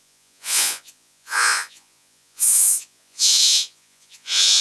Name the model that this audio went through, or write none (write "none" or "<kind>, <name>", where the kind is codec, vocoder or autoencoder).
vocoder, Vocos